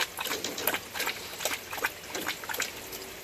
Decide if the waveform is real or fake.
real